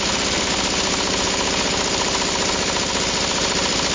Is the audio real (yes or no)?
yes